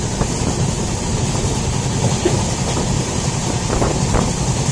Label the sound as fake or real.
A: real